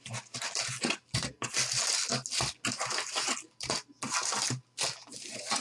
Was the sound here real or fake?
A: real